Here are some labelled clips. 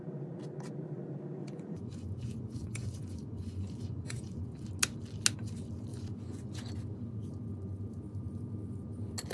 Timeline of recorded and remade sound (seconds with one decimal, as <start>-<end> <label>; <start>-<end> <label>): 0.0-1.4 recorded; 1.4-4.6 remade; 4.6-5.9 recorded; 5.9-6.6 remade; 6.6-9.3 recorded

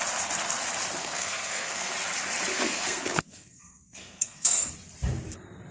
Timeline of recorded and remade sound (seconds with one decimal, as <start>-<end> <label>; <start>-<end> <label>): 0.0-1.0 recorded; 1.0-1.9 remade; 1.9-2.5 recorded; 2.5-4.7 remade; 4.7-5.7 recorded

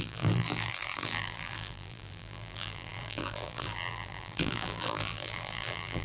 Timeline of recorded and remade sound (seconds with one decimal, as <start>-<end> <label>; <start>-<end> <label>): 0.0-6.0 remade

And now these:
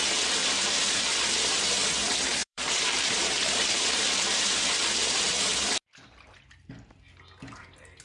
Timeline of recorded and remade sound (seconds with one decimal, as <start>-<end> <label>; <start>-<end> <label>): 0.0-2.4 recorded; 2.4-5.6 remade; 5.6-8.0 recorded